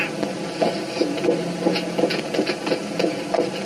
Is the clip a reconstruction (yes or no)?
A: no